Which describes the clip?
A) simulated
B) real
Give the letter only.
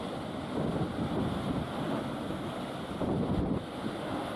B